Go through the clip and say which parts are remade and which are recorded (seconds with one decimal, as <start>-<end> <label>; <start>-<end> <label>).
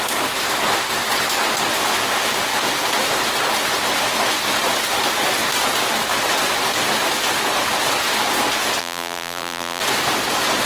0.0-8.8 recorded; 8.8-9.8 remade; 9.8-10.7 recorded